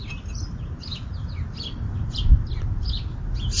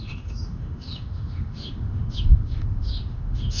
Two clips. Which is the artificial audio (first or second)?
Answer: second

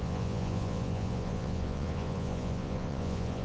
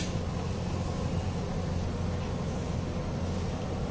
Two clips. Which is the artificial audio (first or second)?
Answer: first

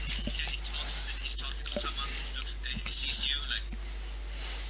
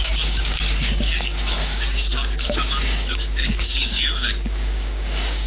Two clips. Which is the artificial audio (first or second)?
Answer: second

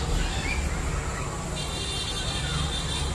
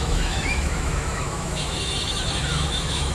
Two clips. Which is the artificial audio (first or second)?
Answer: second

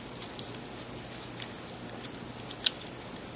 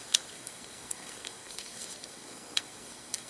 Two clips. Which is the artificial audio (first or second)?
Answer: second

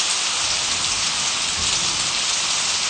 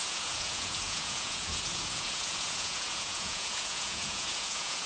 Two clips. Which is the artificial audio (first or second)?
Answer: second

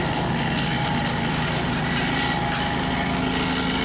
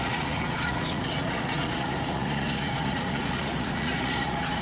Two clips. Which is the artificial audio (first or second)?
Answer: second